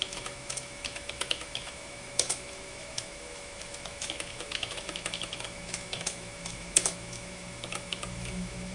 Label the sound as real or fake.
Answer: fake